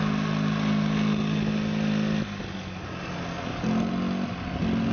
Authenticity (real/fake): real